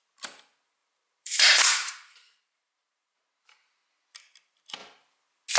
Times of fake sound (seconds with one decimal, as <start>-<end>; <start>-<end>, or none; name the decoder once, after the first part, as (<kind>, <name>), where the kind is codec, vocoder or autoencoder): 0.8-3.3 (vocoder, BigVGAN v2)